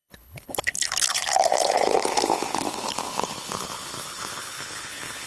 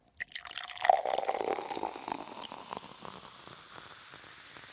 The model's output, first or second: first